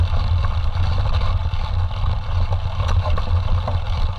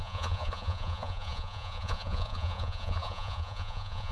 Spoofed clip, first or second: second